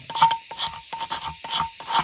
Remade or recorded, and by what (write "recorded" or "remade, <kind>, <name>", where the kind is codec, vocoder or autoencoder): recorded